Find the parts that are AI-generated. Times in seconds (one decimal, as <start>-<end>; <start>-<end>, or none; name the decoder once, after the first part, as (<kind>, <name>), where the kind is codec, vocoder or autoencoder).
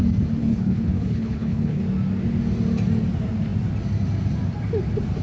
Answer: 0.4-1.8 (codec, HILCodec)